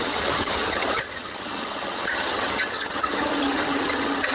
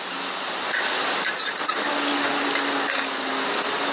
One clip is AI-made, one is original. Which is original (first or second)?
second